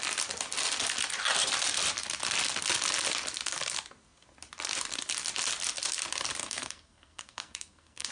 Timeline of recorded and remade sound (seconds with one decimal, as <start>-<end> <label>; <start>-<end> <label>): 0.0-6.4 recorded; 6.4-8.1 remade